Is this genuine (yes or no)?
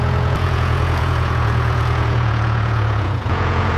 no